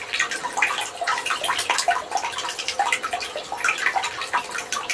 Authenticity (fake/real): real